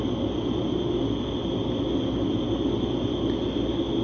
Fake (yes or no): no